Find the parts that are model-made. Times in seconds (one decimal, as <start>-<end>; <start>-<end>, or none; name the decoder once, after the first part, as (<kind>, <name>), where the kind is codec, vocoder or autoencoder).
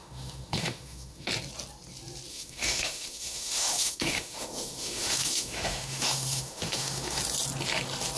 0.0-1.3 (autoencoder, DAC-VAE); 2.3-7.2